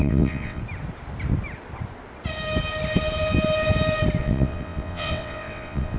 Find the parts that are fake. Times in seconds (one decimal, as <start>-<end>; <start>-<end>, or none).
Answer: 0.0-0.6; 4.2-6.0